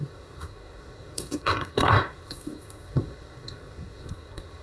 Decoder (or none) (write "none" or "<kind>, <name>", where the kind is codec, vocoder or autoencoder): codec, SNAC